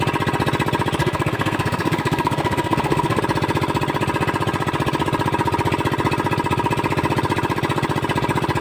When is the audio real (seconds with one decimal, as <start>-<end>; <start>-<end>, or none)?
0.0-1.0; 3.2-8.6